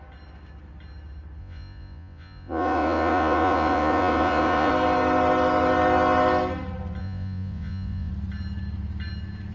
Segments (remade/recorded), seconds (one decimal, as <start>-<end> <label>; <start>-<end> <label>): 0.0-1.4 recorded; 1.4-4.7 remade; 4.7-7.0 recorded; 7.0-8.1 remade; 8.1-9.5 recorded

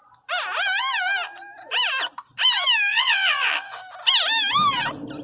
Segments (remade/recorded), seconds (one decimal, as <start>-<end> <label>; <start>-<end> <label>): 0.0-2.9 recorded; 2.9-3.8 remade; 3.8-5.2 recorded

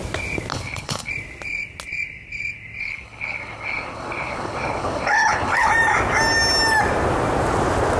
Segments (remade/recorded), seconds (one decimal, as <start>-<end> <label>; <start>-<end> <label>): 0.0-0.5 recorded; 0.5-1.1 remade; 1.1-2.8 recorded; 2.8-5.7 remade; 5.7-8.0 recorded

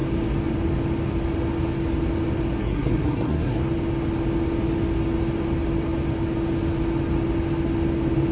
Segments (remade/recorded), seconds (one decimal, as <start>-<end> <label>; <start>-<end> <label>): 0.0-2.6 recorded; 2.6-3.6 remade; 3.6-8.3 recorded

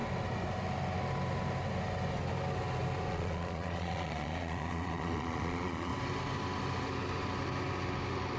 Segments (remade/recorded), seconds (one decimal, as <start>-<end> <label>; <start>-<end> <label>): 0.0-3.1 recorded; 3.1-5.9 remade; 5.9-8.4 recorded

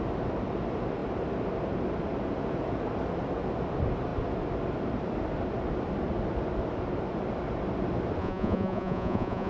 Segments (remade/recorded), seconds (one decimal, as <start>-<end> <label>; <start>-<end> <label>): 0.0-8.2 recorded; 8.2-9.5 remade